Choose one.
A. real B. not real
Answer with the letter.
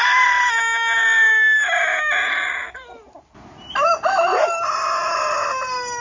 A